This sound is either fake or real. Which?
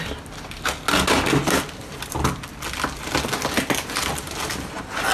real